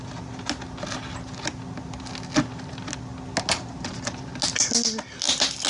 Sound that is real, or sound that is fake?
real